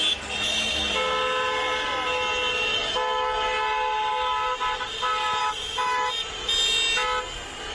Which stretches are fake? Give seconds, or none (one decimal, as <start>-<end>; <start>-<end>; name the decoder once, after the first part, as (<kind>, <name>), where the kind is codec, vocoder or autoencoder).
5.4-6.1 (autoencoder, DAC-VAE)